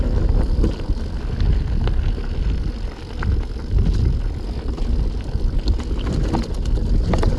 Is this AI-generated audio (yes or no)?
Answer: no